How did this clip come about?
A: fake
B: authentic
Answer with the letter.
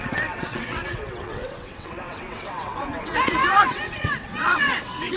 A